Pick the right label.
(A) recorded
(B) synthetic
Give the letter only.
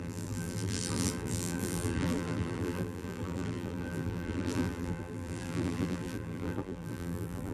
B